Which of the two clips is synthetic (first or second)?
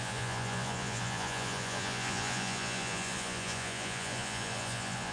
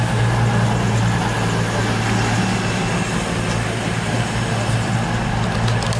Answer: first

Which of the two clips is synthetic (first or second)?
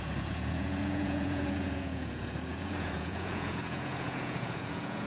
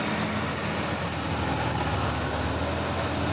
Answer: first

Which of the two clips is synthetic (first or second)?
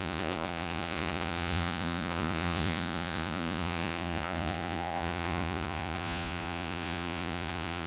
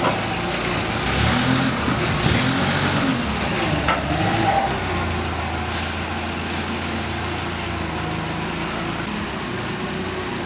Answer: first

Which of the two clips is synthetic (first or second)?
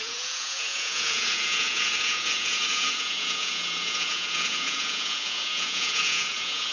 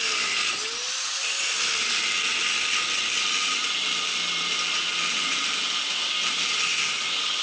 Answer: first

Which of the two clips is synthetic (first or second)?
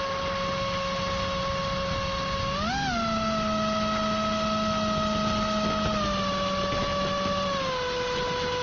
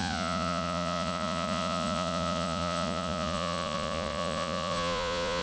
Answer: second